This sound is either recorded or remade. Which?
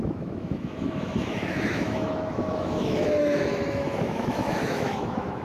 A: remade